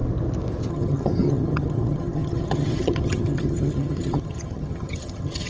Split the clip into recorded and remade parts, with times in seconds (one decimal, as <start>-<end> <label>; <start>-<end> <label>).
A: 0.0-0.7 recorded; 0.7-5.5 remade